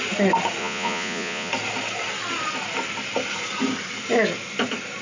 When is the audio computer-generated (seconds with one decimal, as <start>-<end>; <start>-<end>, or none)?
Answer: 0.6-1.5